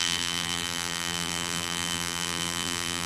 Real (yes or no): no